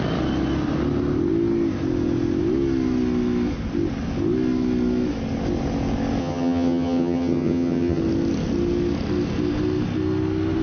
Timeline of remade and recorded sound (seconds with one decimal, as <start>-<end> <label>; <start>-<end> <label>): 0.0-6.2 recorded; 6.2-8.0 remade; 8.0-10.6 recorded

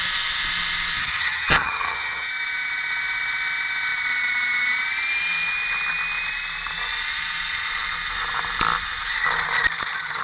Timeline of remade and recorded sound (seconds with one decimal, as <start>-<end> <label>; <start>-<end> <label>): 0.0-1.0 recorded; 1.0-2.3 remade; 2.3-10.2 recorded

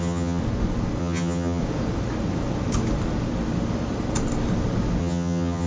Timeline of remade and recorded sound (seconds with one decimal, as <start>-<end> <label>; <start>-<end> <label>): 0.0-0.4 remade; 0.4-1.0 recorded; 1.0-1.6 remade; 1.6-5.0 recorded; 5.0-5.7 remade

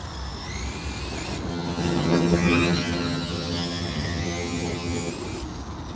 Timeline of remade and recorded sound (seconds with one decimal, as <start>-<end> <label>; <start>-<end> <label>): 0.0-1.5 recorded; 1.5-5.1 remade; 5.1-6.0 recorded

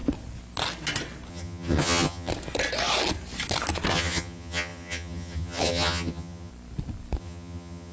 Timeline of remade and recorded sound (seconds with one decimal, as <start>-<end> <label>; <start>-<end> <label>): 0.0-1.3 recorded; 1.3-2.3 remade; 2.3-3.9 recorded; 3.9-6.5 remade; 6.5-7.2 recorded; 7.2-7.9 remade

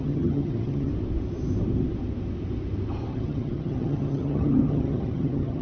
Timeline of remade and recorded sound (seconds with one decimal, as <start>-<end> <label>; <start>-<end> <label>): 0.0-0.9 remade; 0.9-3.1 recorded; 3.1-5.6 remade

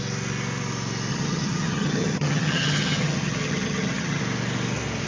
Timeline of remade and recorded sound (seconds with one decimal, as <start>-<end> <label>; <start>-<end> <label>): 0.0-1.1 recorded; 1.1-4.2 remade; 4.2-5.1 recorded

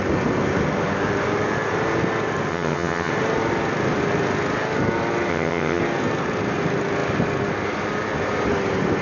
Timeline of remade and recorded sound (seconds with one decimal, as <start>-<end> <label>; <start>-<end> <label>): 0.0-2.5 recorded; 2.5-3.1 remade; 3.1-5.3 recorded; 5.3-5.8 remade; 5.8-9.0 recorded